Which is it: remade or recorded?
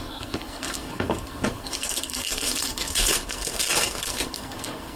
remade